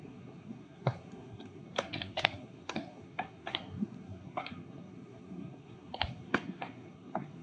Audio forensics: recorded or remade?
remade